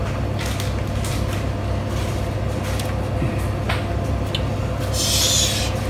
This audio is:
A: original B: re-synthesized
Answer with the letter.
A